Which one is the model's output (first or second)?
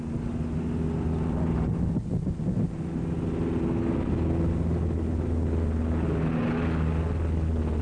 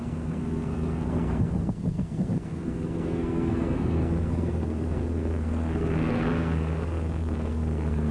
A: second